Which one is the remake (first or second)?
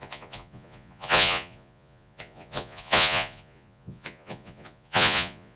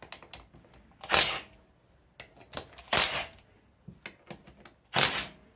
first